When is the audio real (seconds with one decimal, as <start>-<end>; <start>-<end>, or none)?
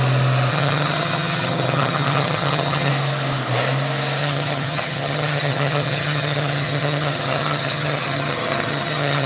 0.0-0.5; 2.9-4.2